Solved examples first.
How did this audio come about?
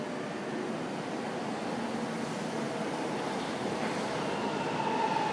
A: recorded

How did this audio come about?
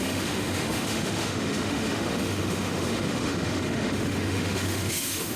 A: remade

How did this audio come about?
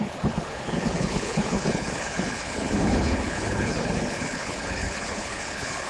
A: remade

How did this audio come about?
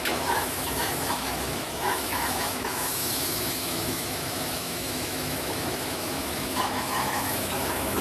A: remade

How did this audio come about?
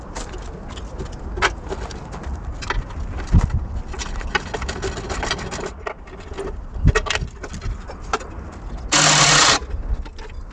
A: recorded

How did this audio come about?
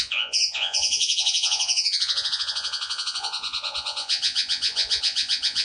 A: remade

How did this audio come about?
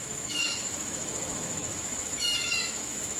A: remade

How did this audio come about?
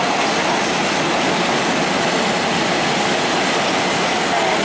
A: recorded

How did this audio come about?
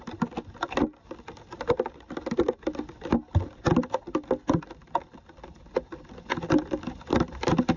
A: recorded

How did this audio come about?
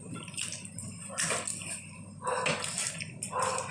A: recorded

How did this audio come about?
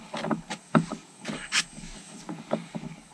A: remade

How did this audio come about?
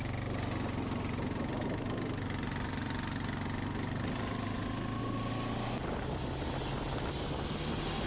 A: recorded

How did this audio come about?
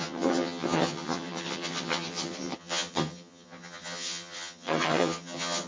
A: remade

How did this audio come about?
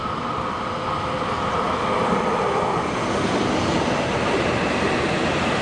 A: recorded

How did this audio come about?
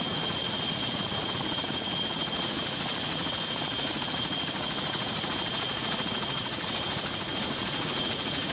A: remade